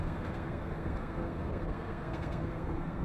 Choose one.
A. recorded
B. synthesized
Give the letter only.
B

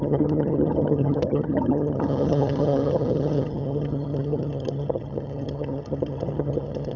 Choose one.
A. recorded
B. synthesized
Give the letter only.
B